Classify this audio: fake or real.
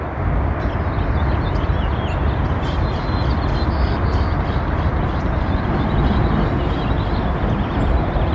real